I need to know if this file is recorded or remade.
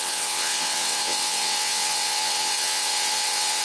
remade